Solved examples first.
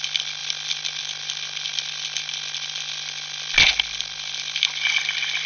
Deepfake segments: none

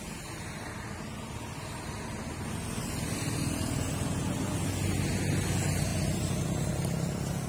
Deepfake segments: none

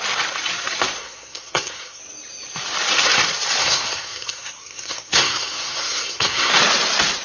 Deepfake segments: 1.0-2.0; 3.6-6.5